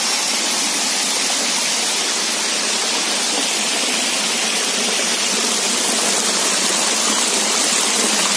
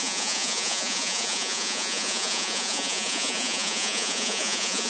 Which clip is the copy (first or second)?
second